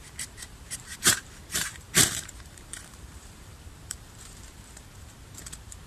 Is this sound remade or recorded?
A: remade